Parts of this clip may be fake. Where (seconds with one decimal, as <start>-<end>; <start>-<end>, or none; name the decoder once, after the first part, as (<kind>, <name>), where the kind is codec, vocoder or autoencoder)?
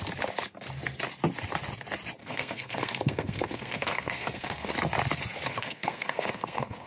2.2-4.7 (codec, SNAC); 5.5-6.9